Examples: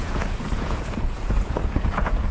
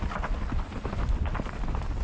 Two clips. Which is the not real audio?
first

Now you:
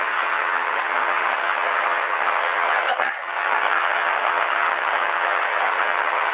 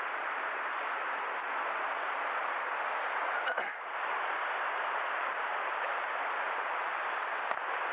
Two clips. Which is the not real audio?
first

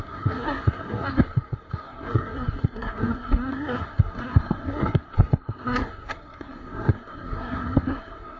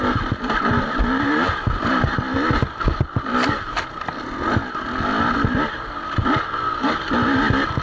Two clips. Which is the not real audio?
first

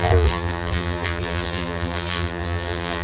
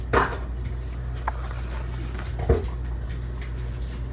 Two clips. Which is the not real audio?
first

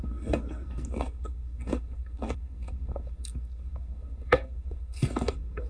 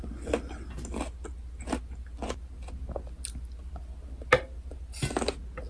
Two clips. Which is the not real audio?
first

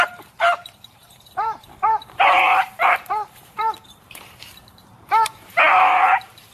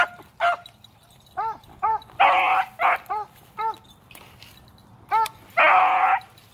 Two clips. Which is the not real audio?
first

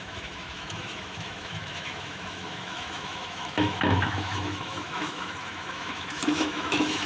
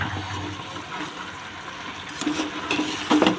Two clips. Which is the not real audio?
first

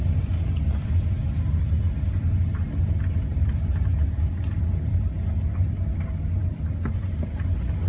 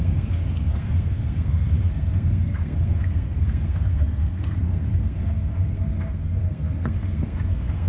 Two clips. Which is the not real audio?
second